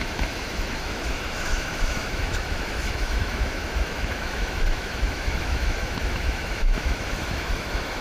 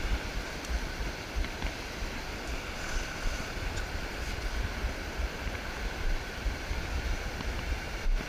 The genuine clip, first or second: second